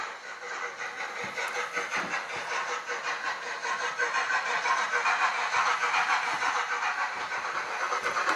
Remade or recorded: recorded